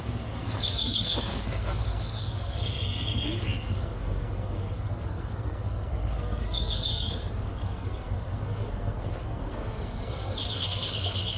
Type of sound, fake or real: fake